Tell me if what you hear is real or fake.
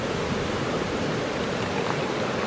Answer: real